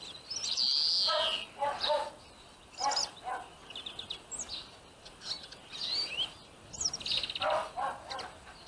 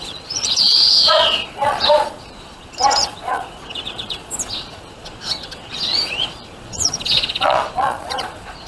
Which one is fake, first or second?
second